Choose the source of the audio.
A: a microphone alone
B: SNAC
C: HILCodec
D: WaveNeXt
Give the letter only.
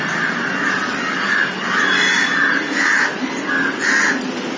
A